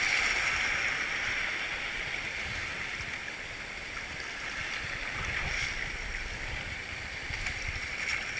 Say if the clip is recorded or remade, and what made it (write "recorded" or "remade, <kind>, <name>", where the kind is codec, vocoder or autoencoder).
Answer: recorded